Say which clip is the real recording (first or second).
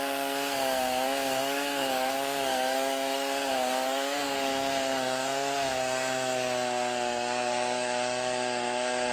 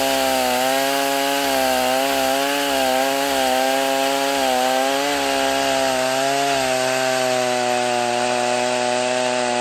second